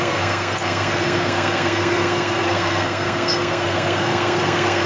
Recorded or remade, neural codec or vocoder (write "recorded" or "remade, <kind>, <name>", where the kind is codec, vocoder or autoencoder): remade, codec, SNAC